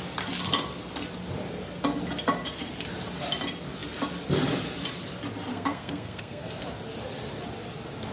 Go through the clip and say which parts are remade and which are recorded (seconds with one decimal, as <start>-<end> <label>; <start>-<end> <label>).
0.0-5.5 recorded; 5.5-6.5 remade; 6.5-8.1 recorded